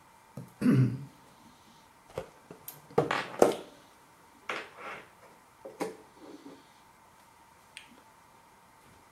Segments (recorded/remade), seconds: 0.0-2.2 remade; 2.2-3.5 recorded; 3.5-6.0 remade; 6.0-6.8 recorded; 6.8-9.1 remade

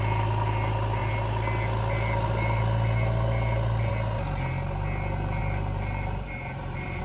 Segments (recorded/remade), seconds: 0.0-5.4 recorded; 5.4-7.0 remade

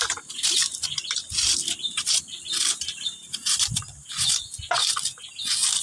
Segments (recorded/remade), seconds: 0.0-0.6 recorded; 0.6-4.1 remade; 4.1-5.8 recorded

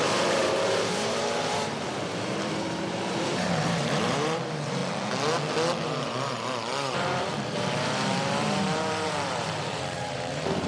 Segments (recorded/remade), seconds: 0.0-4.8 remade; 4.8-5.8 recorded; 5.8-10.7 remade

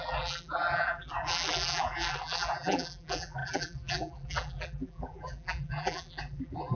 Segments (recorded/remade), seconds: 0.0-6.8 remade

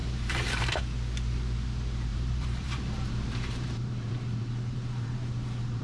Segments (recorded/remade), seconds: 0.0-0.8 remade; 0.8-2.1 recorded; 2.1-5.8 remade